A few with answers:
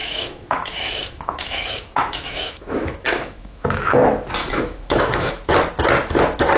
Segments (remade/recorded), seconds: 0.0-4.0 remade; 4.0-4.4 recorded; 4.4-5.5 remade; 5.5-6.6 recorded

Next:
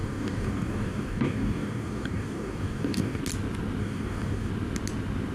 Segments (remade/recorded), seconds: 0.0-3.2 remade; 3.2-3.8 recorded; 3.8-4.5 remade; 4.5-5.3 recorded

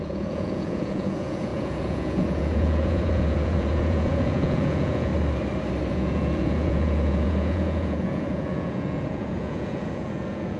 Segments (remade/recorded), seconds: 0.0-5.1 remade; 5.1-5.9 recorded; 5.9-10.6 remade